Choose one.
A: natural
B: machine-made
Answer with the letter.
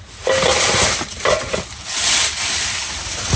A